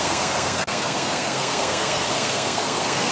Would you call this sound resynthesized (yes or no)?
yes